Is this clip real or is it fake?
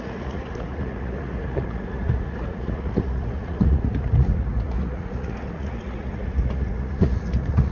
fake